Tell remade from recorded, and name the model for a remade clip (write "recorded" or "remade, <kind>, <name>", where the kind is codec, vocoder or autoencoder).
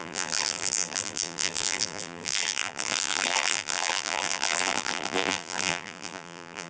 remade, vocoder, BigVGAN v2